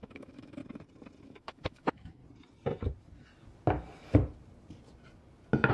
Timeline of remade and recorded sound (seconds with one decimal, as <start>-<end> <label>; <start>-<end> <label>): 0.0-0.6 remade; 0.6-1.2 recorded; 1.2-2.2 remade; 2.2-5.7 recorded